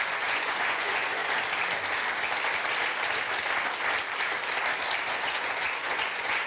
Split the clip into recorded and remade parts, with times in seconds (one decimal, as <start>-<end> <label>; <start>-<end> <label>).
0.0-1.2 remade; 1.2-5.1 recorded; 5.1-6.5 remade